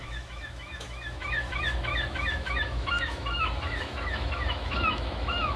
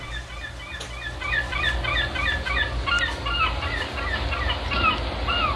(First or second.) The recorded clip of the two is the second